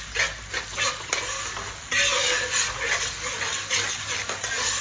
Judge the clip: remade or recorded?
recorded